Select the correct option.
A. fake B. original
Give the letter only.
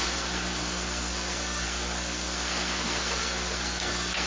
A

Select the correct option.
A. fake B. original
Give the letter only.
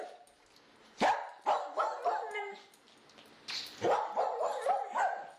B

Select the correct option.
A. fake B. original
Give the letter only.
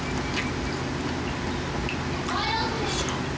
B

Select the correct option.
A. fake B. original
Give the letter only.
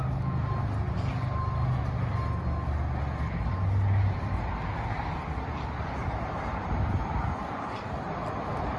B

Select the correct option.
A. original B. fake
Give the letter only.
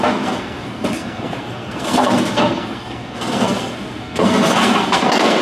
B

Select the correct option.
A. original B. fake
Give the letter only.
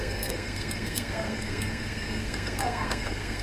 B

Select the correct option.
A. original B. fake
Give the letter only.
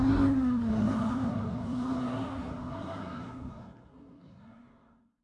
B